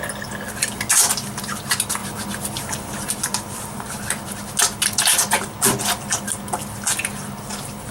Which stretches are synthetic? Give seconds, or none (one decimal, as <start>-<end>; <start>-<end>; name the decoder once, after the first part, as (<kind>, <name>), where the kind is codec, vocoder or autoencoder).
none